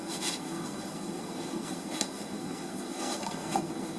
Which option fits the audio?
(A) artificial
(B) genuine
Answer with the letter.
A